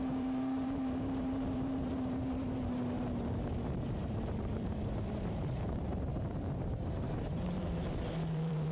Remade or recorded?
remade